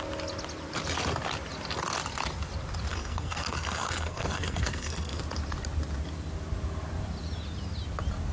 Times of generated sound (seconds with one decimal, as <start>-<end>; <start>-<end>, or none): 2.9-5.2